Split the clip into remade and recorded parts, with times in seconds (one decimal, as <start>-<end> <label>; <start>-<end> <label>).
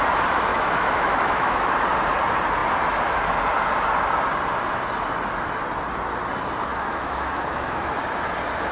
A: 0.0-0.5 recorded; 0.5-1.7 remade; 1.7-6.7 recorded; 6.7-7.9 remade; 7.9-8.7 recorded